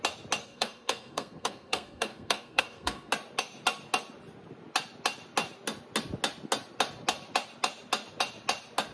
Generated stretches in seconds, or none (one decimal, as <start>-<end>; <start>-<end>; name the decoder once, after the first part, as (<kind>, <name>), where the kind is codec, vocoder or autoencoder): 0.4-3.1 (codec, SNAC)